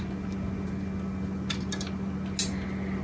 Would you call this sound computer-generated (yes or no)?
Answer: no